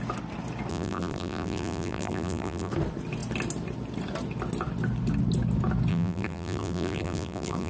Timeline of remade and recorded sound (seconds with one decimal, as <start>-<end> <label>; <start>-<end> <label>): 0.0-0.7 recorded; 0.7-2.7 remade; 2.7-5.9 recorded; 5.9-7.7 remade